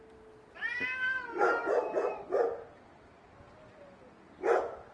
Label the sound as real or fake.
real